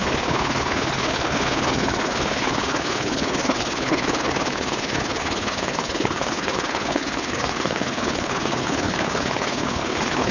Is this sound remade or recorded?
remade